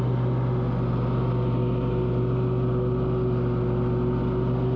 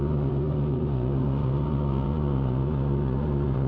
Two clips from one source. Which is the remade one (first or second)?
second